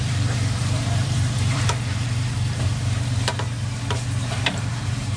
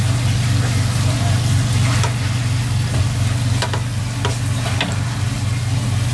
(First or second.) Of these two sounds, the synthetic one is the first